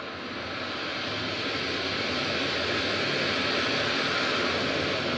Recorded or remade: recorded